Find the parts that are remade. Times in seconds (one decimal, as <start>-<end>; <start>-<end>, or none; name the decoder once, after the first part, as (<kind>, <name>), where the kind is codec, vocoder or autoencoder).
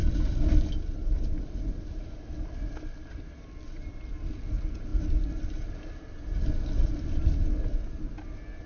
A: none